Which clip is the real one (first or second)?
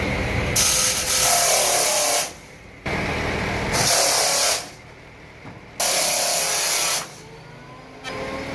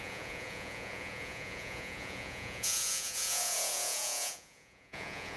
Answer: first